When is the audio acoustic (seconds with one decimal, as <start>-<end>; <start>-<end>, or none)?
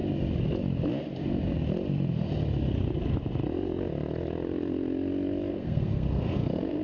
0.0-5.5